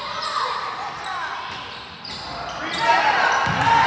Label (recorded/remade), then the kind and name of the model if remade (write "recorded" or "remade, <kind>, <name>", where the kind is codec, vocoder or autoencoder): recorded